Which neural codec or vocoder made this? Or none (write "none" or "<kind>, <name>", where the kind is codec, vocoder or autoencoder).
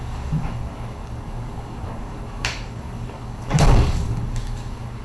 codec, DAC